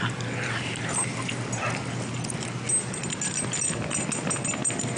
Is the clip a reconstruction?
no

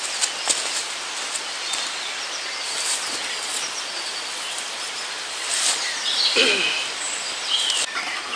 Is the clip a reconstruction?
no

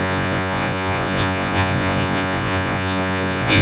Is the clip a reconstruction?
yes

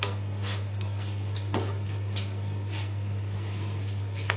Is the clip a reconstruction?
yes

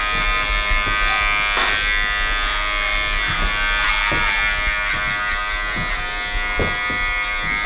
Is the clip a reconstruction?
no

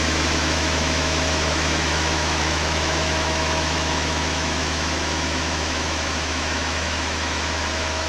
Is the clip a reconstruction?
yes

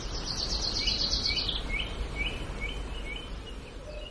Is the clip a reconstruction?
no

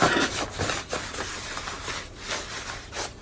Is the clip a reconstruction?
no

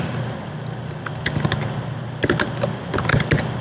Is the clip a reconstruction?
no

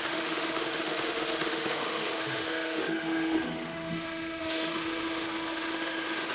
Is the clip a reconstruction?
yes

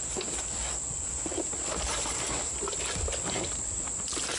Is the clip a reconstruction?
no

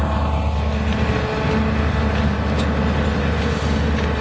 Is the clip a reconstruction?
no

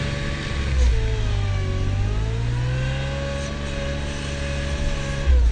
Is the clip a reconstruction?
no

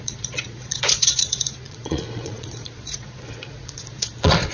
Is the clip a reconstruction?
yes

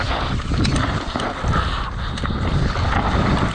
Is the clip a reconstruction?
no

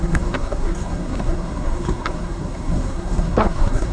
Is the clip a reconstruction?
yes